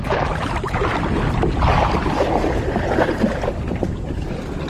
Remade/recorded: recorded